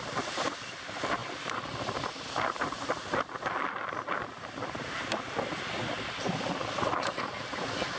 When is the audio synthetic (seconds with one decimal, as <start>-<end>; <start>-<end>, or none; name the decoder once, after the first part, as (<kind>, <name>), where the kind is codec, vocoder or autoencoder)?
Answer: none